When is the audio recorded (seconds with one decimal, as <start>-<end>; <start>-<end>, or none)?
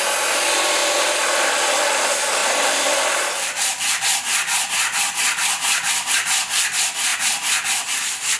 0.0-0.8; 1.5-2.4; 6.1-8.4